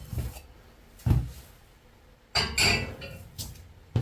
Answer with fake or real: real